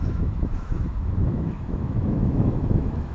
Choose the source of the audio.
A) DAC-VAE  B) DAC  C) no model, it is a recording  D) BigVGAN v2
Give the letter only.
A